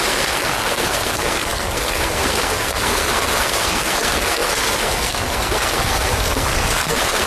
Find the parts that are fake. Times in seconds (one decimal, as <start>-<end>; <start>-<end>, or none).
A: 0.0-7.3